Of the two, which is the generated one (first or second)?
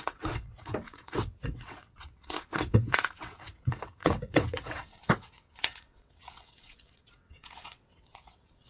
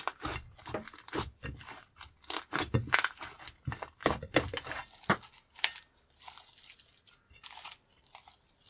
first